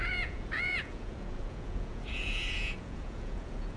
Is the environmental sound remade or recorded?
remade